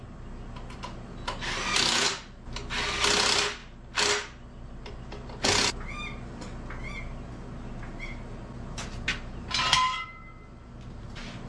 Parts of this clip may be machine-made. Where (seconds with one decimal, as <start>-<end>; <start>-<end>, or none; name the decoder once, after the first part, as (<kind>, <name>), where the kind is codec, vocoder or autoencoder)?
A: none